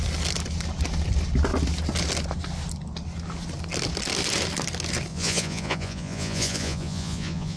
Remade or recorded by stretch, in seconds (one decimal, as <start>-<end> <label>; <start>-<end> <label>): 0.0-5.1 recorded; 5.1-7.6 remade